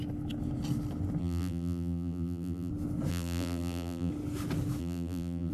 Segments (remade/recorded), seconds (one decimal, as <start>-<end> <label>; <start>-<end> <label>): 0.0-1.2 recorded; 1.2-2.7 remade; 2.7-3.1 recorded; 3.1-4.1 remade; 4.1-4.8 recorded; 4.8-5.5 remade